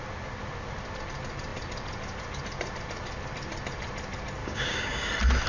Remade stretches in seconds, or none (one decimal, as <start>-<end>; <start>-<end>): 4.4-5.1